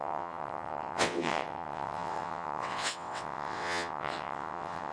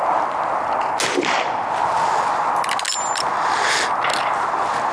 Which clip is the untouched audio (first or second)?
second